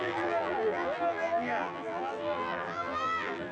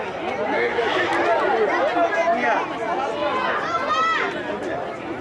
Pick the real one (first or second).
second